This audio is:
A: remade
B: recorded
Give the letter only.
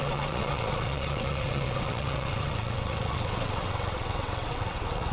A